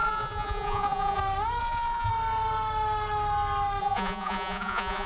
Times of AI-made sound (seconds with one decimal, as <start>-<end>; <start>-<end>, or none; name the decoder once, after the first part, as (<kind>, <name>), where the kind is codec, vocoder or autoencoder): 0.0-1.2 (vocoder, Vocos); 1.6-2.1; 3.8-5.1